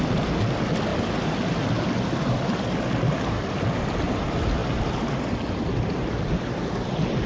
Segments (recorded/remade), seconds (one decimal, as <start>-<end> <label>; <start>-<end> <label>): 0.0-7.3 recorded